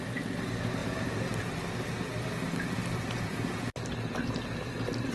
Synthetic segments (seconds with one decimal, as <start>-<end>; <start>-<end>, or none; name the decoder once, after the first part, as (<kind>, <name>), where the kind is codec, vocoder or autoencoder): none